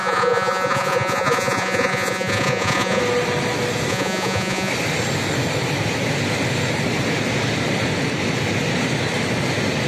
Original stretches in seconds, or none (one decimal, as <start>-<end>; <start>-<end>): 3.0-3.9; 4.7-9.9